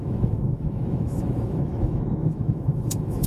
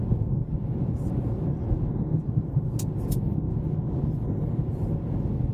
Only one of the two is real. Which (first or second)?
second